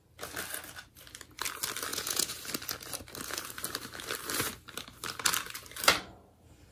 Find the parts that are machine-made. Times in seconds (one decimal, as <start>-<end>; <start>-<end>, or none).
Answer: 1.9-2.4